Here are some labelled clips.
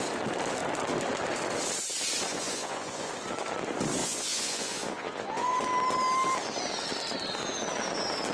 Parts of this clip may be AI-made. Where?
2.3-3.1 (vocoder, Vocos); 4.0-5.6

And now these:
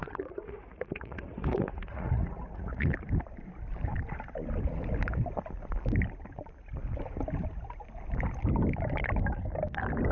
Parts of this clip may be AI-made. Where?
0.0-2.9 (vocoder, Vocos)

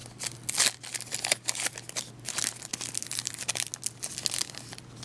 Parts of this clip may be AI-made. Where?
none

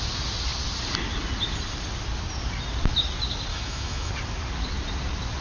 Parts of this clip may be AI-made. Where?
3.5-4.1 (autoencoder, DAC-VAE)

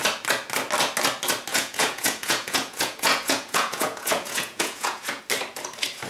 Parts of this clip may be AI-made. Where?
1.5-5.2 (vocoder, Vocos)

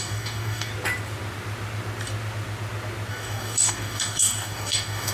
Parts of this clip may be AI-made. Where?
0.0-0.7 (codec, DAC); 3.1-5.1

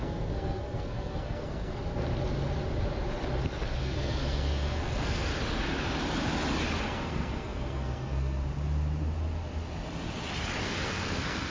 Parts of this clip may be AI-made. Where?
0.0-1.8 (codec, SNAC); 3.8-5.3; 6.8-8.4; 10.6-11.5